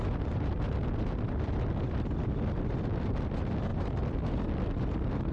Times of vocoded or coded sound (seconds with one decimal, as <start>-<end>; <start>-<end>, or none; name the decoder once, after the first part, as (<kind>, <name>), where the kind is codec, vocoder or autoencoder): none